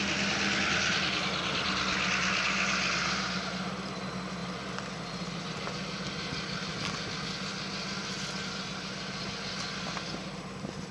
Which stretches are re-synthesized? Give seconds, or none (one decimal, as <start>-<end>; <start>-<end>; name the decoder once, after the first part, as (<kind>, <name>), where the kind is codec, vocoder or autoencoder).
none